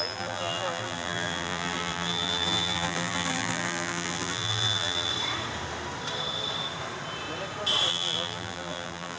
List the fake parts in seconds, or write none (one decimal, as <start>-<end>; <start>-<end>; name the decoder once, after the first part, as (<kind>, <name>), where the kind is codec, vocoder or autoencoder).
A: 0.0-5.1 (vocoder, BigVGAN v2); 7.9-9.2